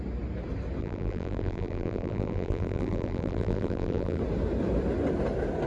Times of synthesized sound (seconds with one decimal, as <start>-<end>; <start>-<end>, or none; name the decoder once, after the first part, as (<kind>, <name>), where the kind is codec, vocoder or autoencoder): 0.8-4.2 (vocoder, BigVGAN v2)